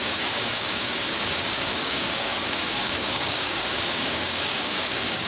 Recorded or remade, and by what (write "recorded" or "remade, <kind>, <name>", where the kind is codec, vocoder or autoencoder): remade, codec, DAC